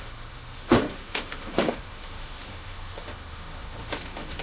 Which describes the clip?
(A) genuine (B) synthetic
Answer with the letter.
B